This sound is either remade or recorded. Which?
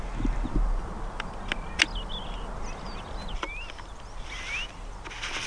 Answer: recorded